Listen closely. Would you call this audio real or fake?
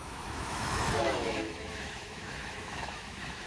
fake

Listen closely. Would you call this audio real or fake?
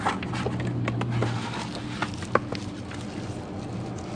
real